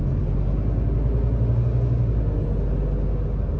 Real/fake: real